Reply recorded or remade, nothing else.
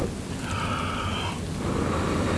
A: recorded